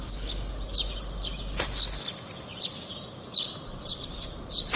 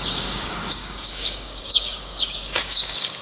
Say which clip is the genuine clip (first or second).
first